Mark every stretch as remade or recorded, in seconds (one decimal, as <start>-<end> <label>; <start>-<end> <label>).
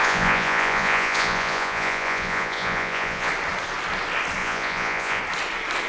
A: 0.0-3.3 remade; 3.3-4.4 recorded; 4.4-5.2 remade; 5.2-5.9 recorded